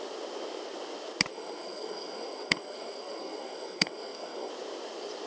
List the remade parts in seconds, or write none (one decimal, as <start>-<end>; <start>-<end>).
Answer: 1.3-4.5